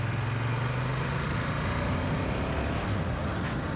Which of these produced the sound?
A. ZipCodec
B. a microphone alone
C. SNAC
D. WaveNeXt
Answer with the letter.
B